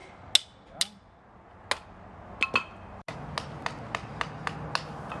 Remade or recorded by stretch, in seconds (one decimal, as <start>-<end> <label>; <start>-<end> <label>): 0.0-5.2 recorded